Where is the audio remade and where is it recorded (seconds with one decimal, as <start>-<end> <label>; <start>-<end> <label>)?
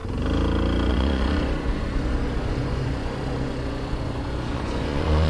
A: 0.0-0.9 recorded; 0.9-5.3 remade